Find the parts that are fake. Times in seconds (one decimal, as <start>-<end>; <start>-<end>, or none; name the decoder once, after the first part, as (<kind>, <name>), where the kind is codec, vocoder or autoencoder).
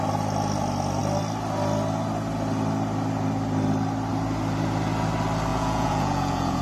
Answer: 5.5-6.6 (vocoder, Vocos)